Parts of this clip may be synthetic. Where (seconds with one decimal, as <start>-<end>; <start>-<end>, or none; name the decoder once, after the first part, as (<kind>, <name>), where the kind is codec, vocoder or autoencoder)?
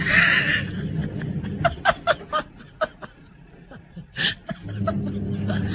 none